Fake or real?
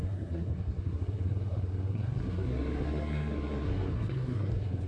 fake